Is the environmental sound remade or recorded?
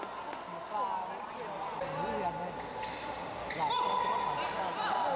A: recorded